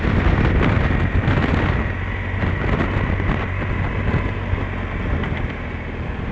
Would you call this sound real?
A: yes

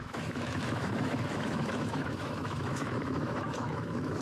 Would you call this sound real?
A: no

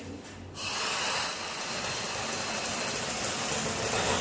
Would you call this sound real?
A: yes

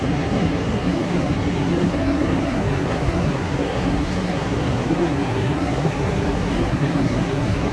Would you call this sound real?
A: no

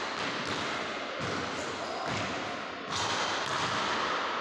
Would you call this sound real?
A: yes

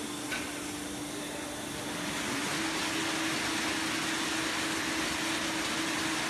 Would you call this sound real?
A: yes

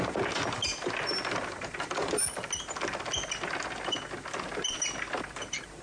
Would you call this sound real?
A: yes